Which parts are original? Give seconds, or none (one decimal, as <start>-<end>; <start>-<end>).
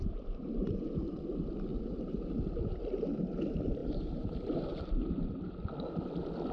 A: 0.0-1.7; 2.2-3.8; 5.7-6.5